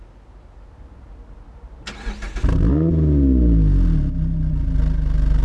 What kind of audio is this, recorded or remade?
recorded